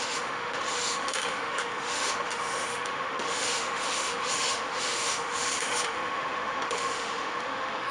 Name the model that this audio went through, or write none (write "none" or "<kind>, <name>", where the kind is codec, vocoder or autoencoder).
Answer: autoencoder, DAC-VAE